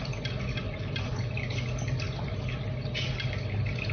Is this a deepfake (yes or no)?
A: no